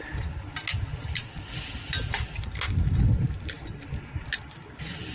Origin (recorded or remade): recorded